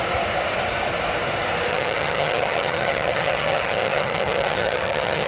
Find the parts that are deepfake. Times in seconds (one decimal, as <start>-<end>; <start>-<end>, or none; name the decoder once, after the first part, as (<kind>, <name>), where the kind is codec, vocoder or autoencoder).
1.7-5.3 (vocoder, HiFi-GAN)

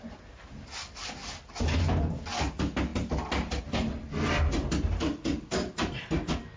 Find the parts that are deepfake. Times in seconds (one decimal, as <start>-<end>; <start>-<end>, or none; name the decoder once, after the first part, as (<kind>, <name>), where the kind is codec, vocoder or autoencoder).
1.0-1.5 (vocoder, BigVGAN v2); 5.3-6.0